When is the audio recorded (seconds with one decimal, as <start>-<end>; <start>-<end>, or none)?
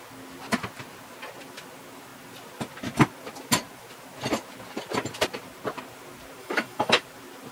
0.0-6.4; 7.0-7.5